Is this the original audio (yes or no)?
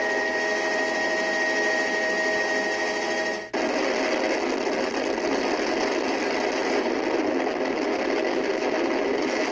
yes